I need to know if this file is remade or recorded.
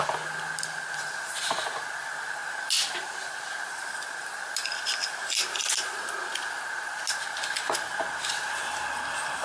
recorded